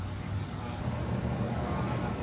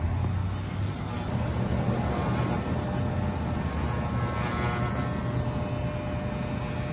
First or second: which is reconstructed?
first